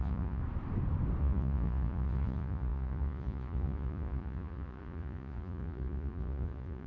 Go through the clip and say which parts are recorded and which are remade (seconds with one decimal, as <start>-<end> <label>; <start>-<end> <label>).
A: 0.0-0.4 remade; 0.4-1.2 recorded; 1.2-6.9 remade